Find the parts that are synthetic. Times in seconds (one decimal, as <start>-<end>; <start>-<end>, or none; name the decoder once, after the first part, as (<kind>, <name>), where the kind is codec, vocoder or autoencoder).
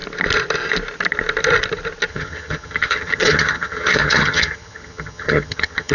2.1-5.9 (vocoder, HiFi-GAN)